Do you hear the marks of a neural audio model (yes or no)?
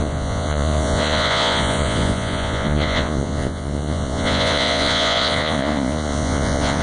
yes